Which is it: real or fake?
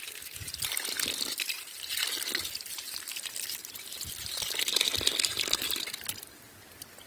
real